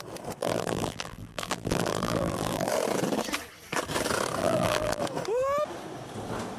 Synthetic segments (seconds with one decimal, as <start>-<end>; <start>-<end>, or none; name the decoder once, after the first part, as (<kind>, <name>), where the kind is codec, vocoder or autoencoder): 0.4-2.7 (vocoder, BigVGAN v2); 4.4-5.0